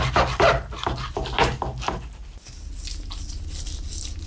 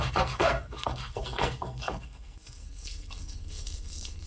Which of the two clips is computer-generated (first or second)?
second